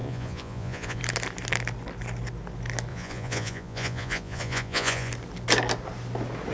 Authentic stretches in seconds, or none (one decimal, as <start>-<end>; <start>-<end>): 1.0-2.9; 5.1-6.5